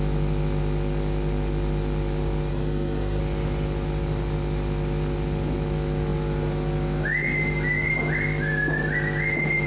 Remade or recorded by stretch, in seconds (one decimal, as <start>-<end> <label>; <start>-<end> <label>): 0.0-2.5 recorded; 2.5-3.2 remade; 3.2-9.7 recorded